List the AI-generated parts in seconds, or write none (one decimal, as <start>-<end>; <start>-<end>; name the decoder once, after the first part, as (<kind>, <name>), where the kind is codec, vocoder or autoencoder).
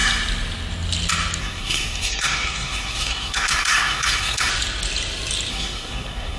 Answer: 1.4-4.5 (codec, SNAC); 5.5-6.4